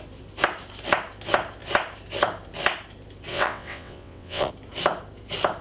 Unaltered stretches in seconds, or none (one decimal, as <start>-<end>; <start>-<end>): 0.0-3.3; 4.5-5.6